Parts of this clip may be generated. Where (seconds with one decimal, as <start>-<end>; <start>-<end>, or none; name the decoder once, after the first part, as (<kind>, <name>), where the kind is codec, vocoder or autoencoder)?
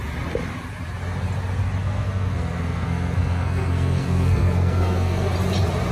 1.8-5.3 (codec, SNAC)